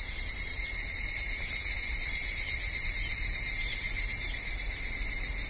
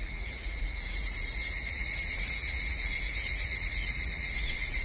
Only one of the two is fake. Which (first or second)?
second